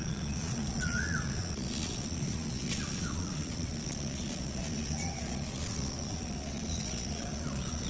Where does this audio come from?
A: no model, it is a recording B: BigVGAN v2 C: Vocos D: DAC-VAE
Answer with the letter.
C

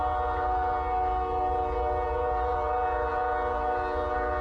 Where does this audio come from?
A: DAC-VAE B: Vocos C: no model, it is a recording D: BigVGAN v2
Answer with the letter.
C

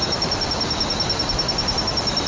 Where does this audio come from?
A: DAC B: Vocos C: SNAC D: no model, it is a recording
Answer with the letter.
D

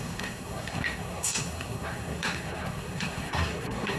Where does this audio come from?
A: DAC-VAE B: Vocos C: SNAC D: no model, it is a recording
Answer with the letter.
C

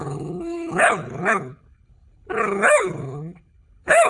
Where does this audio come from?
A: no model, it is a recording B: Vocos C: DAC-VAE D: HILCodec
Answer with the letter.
D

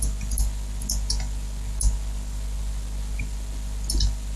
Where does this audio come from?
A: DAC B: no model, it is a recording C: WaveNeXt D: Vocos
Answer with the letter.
B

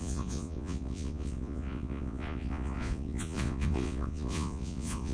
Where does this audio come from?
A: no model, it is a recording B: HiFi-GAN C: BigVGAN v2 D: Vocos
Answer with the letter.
D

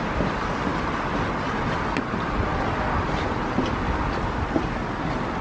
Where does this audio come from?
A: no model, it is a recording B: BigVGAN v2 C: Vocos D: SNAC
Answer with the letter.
A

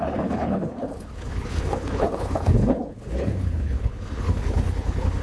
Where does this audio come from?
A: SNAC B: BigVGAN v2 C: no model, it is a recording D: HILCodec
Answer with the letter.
D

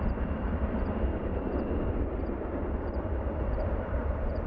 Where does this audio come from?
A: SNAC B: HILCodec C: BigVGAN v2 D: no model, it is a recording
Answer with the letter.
C